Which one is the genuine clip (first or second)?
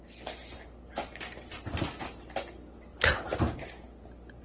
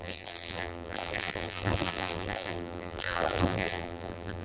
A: first